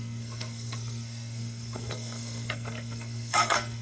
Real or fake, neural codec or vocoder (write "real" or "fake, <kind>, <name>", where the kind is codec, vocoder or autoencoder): fake, codec, SNAC